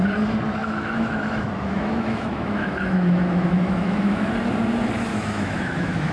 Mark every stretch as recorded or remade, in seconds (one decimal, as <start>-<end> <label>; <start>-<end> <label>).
0.0-0.6 recorded; 0.6-4.3 remade; 4.3-5.1 recorded; 5.1-6.1 remade